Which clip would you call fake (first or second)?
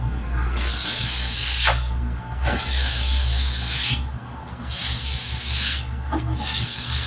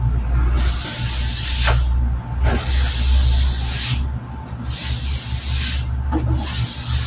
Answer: first